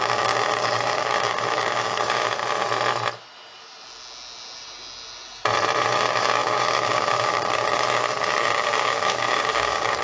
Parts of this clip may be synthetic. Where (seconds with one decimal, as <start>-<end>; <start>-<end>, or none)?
0.0-2.4; 5.8-10.0